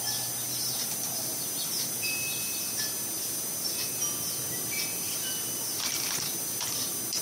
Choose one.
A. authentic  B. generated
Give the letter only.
A